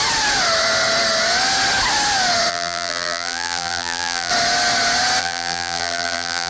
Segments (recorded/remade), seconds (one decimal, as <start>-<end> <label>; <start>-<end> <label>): 0.0-2.5 recorded; 2.5-4.3 remade; 4.3-5.2 recorded; 5.2-6.5 remade